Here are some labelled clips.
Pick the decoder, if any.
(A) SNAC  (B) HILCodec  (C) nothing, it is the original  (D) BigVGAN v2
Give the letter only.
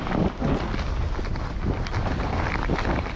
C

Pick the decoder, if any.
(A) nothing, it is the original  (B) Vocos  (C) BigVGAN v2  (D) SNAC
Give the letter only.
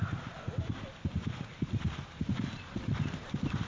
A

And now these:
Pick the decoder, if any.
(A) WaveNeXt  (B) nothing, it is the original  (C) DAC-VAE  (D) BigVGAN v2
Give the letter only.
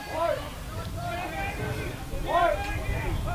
D